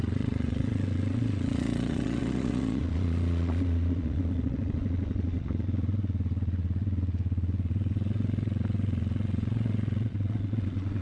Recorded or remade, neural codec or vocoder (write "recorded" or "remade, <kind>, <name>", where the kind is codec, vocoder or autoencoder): remade, vocoder, Vocos